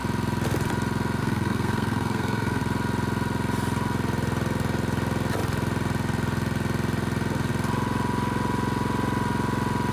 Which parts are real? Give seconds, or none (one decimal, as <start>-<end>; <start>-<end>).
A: 0.0-1.2; 2.6-9.9